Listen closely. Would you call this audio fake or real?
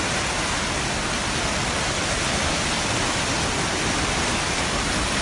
real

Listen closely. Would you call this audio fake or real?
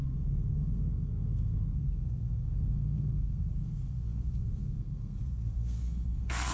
fake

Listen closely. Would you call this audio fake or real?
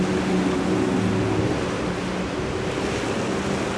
real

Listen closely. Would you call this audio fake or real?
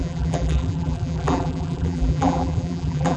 fake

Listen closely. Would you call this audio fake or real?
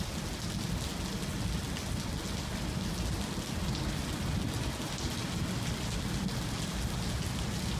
real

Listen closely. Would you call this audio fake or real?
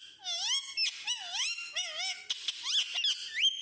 real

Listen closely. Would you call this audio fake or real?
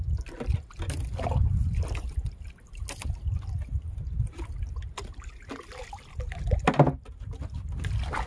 real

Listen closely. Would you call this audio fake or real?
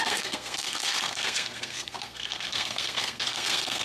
fake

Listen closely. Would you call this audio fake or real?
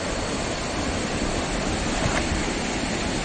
real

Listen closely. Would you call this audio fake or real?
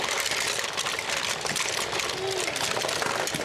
real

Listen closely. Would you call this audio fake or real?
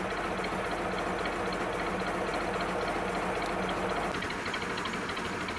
real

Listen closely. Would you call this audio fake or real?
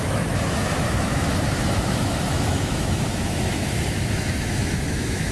fake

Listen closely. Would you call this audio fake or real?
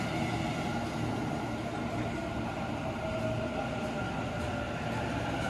real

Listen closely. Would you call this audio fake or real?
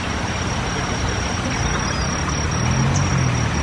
real